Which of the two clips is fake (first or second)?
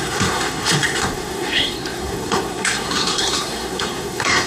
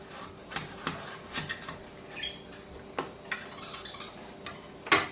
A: first